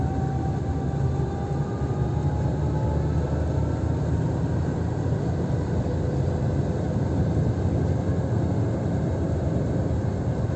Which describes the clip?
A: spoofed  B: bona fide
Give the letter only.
B